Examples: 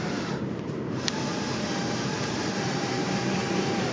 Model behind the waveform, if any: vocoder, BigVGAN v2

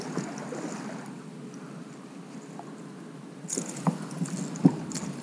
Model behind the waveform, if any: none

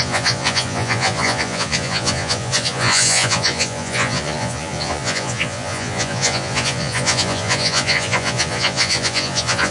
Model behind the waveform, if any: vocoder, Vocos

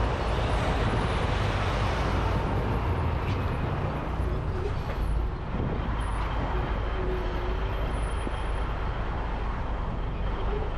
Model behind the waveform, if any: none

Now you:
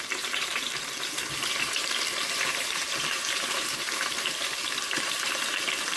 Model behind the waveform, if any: vocoder, BigVGAN v2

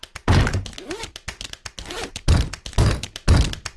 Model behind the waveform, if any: none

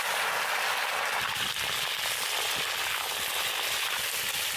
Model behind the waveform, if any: none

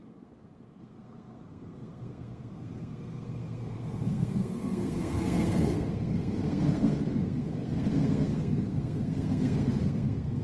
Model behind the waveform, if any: codec, SNAC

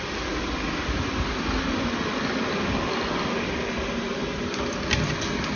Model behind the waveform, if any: none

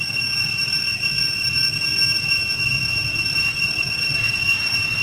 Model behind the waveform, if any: none